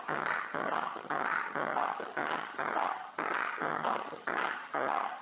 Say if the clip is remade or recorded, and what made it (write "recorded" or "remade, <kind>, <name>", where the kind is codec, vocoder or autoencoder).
remade, vocoder, HiFi-GAN